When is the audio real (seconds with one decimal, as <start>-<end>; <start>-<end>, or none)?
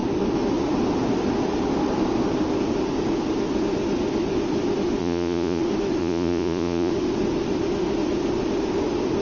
0.0-5.0; 5.6-6.0; 6.9-9.2